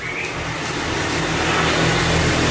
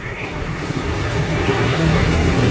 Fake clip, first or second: second